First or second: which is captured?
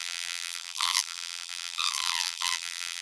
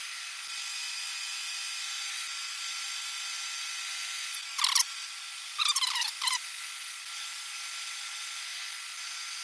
second